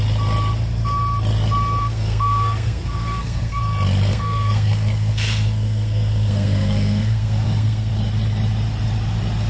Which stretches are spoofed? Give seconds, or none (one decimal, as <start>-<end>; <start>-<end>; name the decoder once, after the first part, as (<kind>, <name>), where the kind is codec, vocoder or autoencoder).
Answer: 1.8-3.6 (codec, SNAC); 4.1-7.9